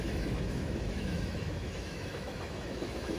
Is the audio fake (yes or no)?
yes